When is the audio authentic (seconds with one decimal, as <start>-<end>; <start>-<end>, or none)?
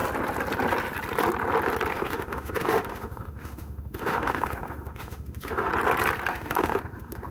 0.0-1.9; 5.7-6.3